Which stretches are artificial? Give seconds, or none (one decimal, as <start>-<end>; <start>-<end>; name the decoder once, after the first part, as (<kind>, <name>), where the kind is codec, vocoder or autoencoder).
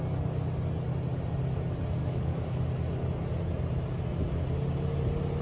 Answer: 2.0-2.6 (codec, DAC)